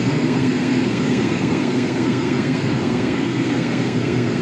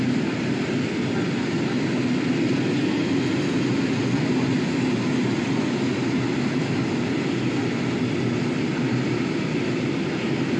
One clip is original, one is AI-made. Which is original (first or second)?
second